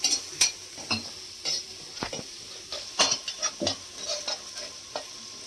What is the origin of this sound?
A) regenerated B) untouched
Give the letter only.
B